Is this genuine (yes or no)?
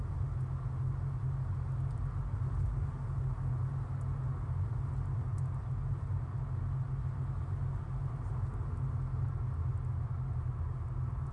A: yes